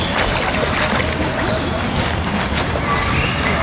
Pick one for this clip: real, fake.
real